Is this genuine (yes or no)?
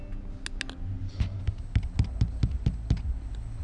yes